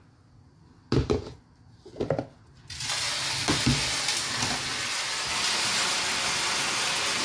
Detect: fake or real real